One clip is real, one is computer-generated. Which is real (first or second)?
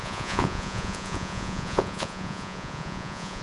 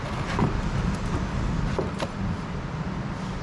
second